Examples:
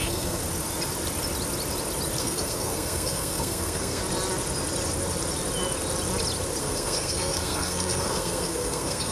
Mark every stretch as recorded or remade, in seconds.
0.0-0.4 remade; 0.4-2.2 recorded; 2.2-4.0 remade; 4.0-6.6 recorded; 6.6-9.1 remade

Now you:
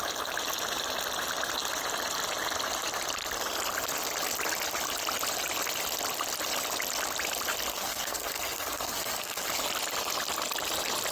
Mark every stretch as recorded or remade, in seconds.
0.0-7.7 recorded; 7.7-9.5 remade; 9.5-11.1 recorded

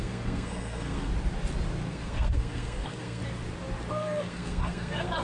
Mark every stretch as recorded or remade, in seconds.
0.0-1.1 remade; 1.1-1.9 recorded; 1.9-3.2 remade; 3.2-3.9 recorded; 3.9-5.2 remade

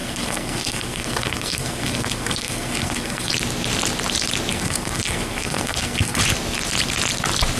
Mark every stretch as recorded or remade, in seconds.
0.0-3.3 remade; 3.3-4.5 recorded; 4.5-6.2 remade; 6.2-7.6 recorded

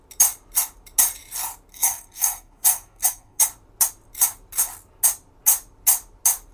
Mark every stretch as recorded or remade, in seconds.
0.0-1.7 recorded; 1.7-3.4 remade; 3.4-6.5 recorded

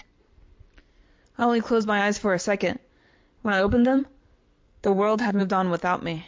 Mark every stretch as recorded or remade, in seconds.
0.0-3.4 recorded; 3.4-4.0 remade; 4.0-4.6 recorded; 4.6-5.4 remade; 5.4-6.3 recorded